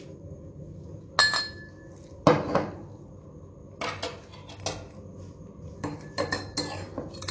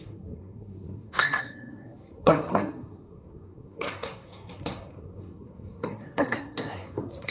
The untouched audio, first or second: first